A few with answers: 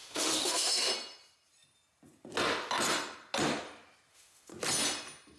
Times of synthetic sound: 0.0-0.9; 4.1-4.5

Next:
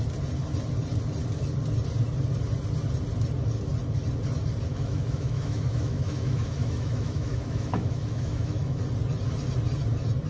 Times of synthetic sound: 4.7-8.8

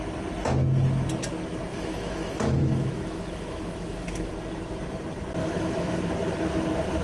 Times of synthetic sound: 1.7-4.3; 5.4-6.0

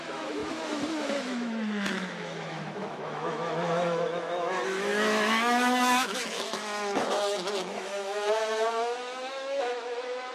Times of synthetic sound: 0.0-10.3

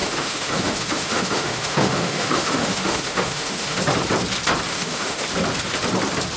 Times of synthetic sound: 0.0-3.8; 4.7-5.2

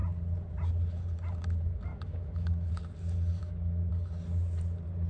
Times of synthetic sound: 1.9-2.7; 3.4-3.9

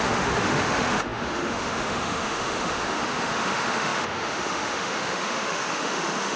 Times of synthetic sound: 0.0-6.4